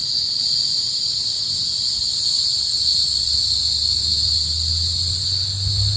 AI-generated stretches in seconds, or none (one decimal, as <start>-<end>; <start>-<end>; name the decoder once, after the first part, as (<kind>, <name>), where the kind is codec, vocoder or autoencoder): none